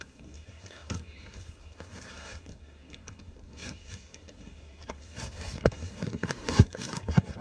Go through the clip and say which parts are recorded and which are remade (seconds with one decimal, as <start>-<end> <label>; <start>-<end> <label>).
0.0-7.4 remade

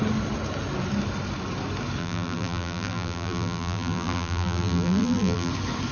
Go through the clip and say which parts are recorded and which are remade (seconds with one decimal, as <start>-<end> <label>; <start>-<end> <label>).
0.0-2.0 recorded; 2.0-5.5 remade; 5.5-5.9 recorded

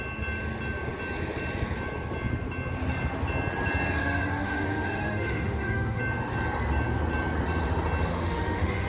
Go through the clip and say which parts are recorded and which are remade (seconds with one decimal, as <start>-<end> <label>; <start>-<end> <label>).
0.0-4.0 recorded; 4.0-6.0 remade; 6.0-8.1 recorded; 8.1-8.9 remade

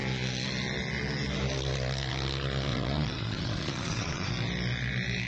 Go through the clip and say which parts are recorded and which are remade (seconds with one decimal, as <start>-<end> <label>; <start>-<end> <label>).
0.0-2.7 recorded; 2.7-4.3 remade; 4.3-5.3 recorded

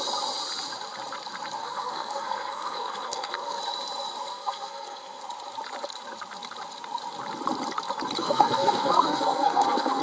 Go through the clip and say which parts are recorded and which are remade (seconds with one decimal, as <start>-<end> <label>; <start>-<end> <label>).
0.0-1.6 recorded; 1.6-3.6 remade; 3.6-4.3 recorded; 4.3-5.2 remade; 5.2-8.2 recorded; 8.2-10.0 remade

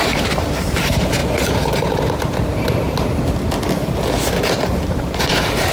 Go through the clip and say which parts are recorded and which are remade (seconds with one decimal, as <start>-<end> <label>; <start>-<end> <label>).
0.0-1.2 remade; 1.2-4.5 recorded; 4.5-5.7 remade

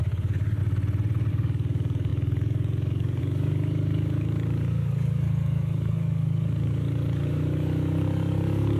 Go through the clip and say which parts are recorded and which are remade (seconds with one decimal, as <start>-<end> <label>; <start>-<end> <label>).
0.0-0.6 remade; 0.6-1.3 recorded; 1.3-8.8 remade